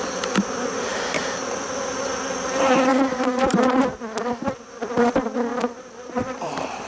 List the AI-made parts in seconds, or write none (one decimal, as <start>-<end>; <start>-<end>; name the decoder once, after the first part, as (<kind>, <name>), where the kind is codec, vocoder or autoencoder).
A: 2.9-3.8 (vocoder, BigVGAN v2); 5.5-6.9